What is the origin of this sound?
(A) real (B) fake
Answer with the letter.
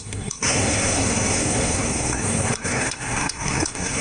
B